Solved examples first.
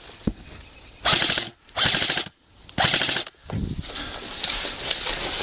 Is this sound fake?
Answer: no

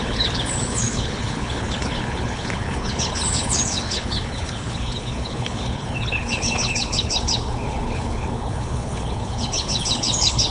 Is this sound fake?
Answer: yes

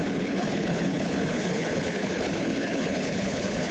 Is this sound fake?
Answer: yes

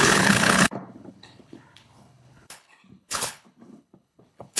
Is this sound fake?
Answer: yes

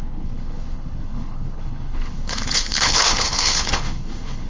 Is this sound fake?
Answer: yes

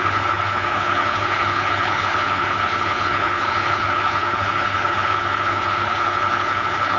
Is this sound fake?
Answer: yes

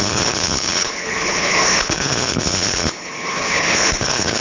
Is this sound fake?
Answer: yes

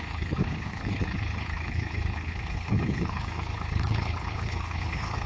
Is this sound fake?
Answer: yes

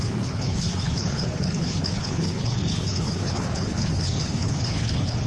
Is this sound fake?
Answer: yes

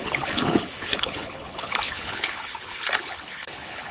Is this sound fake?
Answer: yes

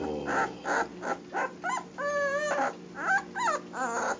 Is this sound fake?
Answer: no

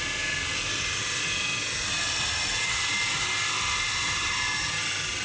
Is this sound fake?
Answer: no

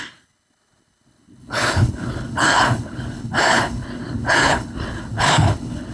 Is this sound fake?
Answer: yes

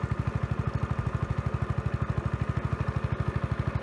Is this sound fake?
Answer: no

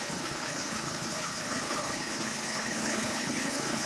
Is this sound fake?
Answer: yes